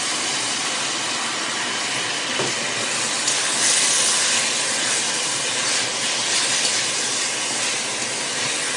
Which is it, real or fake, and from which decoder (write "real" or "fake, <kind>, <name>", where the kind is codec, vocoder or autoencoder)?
real